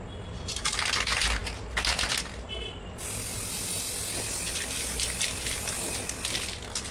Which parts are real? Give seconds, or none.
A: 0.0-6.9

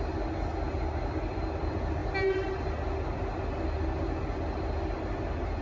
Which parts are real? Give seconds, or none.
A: 0.0-5.6

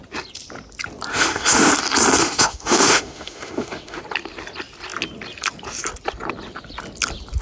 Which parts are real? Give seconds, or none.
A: 0.0-1.1; 1.7-2.2; 4.0-7.4

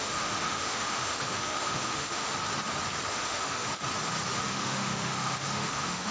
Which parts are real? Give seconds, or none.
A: 2.3-3.1; 3.7-4.5